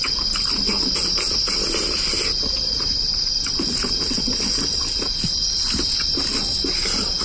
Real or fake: real